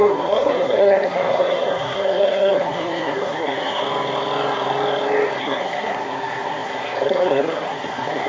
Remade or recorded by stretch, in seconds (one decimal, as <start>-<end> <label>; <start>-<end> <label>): 0.0-3.8 remade; 3.8-5.4 recorded; 5.4-8.3 remade